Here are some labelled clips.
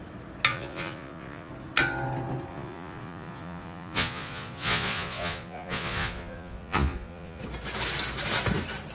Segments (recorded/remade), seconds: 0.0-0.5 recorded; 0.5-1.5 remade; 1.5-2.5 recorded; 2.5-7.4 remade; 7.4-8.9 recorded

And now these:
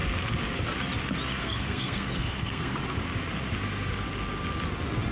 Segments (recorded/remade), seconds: 0.0-1.4 recorded; 1.4-2.7 remade; 2.7-5.1 recorded